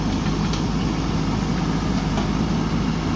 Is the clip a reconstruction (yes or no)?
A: no